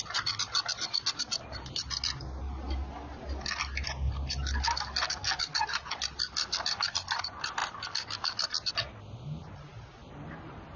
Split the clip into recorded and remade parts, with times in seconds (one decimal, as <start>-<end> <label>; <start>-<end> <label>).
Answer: 0.0-10.8 recorded

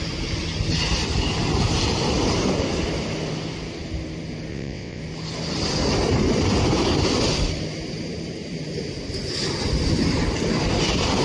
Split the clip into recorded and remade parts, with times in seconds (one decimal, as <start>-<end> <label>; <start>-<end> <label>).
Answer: 0.0-4.5 recorded; 4.5-5.0 remade; 5.0-11.2 recorded

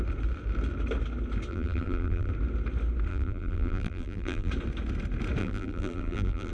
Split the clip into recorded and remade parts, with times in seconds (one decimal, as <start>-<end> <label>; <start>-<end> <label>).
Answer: 0.0-1.5 recorded; 1.5-2.3 remade; 2.3-3.1 recorded; 3.1-4.5 remade; 4.5-5.4 recorded; 5.4-6.5 remade

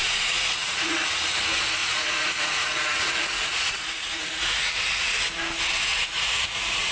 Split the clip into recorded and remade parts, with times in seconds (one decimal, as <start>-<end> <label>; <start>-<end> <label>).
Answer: 0.0-1.4 remade; 1.4-1.8 recorded; 1.8-4.7 remade; 4.7-5.9 recorded; 5.9-6.9 remade

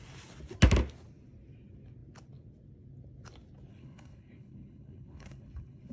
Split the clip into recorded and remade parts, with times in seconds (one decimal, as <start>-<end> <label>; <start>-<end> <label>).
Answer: 0.0-3.7 recorded; 3.7-5.9 remade

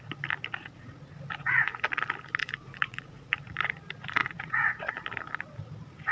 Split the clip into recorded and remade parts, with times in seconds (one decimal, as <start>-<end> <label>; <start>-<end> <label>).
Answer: 0.0-2.4 recorded; 2.4-3.6 remade; 3.6-4.2 recorded; 4.2-4.9 remade; 4.9-6.1 recorded